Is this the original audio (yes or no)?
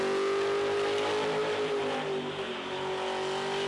yes